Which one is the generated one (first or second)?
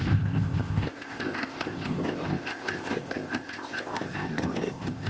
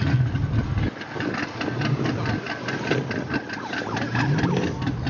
first